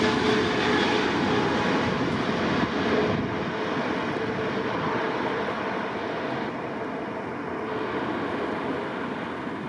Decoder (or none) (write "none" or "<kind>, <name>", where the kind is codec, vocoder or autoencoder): none